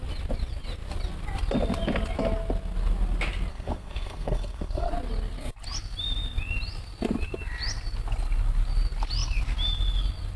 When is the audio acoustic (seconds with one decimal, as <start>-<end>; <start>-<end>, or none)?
0.0-3.5; 4.9-10.4